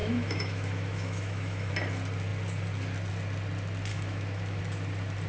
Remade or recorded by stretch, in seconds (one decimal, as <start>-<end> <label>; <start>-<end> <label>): 0.0-1.7 remade; 1.7-3.9 recorded; 3.9-4.6 remade; 4.6-5.3 recorded